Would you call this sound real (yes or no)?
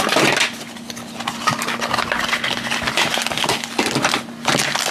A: yes